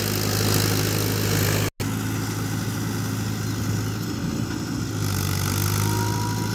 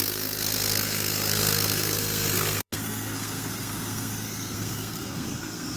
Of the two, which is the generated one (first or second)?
second